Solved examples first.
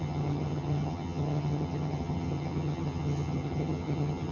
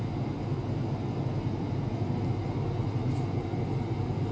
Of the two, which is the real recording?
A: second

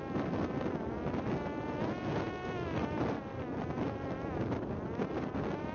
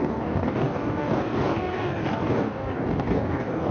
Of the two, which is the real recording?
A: first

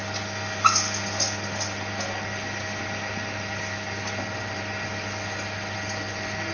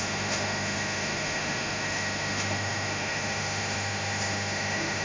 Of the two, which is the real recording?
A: first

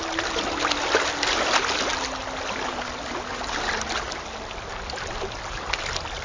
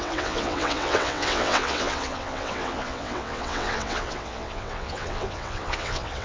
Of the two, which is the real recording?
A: first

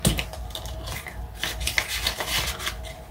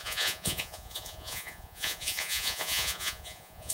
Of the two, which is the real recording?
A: first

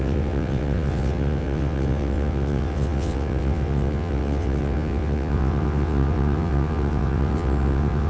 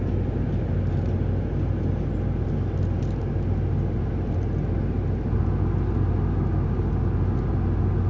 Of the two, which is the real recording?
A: second